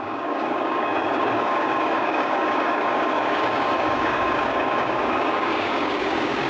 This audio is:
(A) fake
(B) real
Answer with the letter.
A